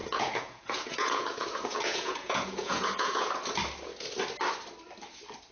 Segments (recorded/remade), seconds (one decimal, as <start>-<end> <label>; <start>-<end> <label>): 0.0-3.3 remade; 3.3-5.5 recorded